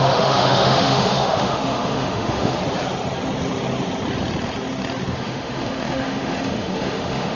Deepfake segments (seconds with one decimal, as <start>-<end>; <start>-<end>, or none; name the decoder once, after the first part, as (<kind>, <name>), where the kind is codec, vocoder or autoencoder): 0.0-2.6 (autoencoder, DAC-VAE); 5.1-7.4